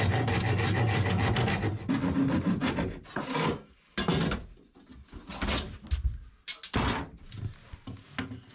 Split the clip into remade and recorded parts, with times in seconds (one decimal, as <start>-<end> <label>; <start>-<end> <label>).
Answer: 0.0-8.5 recorded